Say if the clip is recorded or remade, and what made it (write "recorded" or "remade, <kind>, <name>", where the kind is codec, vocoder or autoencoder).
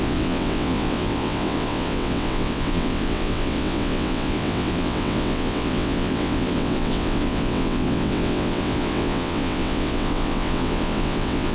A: remade, vocoder, WaveNeXt